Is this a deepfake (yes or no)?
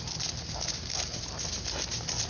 no